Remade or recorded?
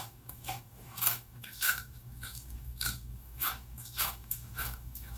remade